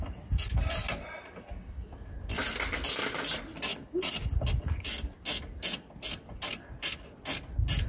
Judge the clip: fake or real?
real